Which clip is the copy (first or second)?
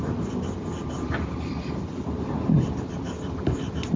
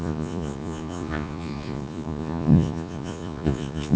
second